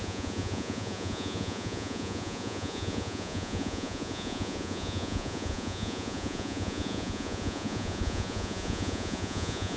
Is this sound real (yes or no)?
no